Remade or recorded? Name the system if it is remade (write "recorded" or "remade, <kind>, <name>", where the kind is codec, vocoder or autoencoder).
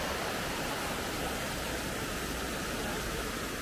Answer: recorded